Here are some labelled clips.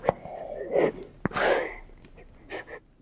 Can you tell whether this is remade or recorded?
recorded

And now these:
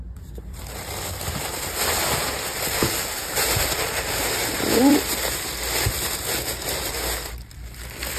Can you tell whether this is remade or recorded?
remade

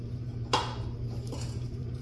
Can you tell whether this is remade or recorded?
remade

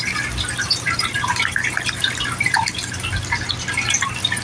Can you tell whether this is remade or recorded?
recorded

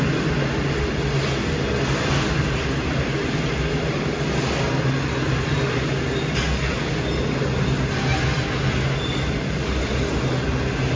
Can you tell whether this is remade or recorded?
recorded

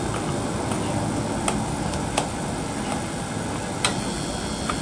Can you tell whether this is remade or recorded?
recorded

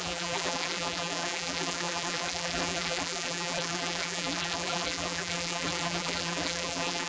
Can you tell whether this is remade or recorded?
remade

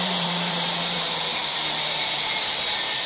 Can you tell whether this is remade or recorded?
remade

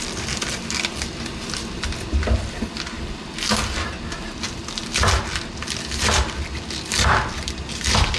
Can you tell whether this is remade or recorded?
recorded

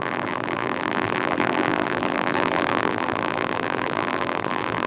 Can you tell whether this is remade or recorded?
remade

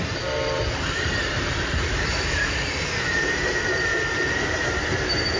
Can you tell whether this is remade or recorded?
remade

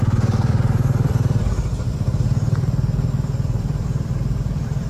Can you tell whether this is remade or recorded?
remade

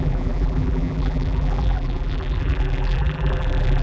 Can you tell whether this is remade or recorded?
remade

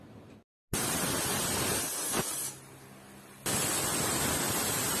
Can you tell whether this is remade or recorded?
recorded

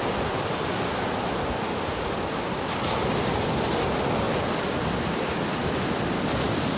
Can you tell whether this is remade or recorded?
remade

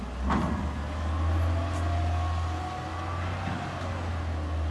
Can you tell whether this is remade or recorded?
recorded